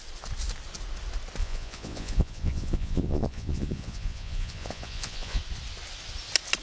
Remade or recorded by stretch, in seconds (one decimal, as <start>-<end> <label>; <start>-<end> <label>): 0.0-1.4 recorded; 1.4-5.4 remade; 5.4-6.6 recorded